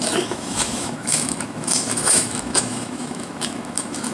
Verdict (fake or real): fake